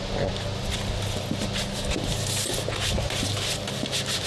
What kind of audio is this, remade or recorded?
recorded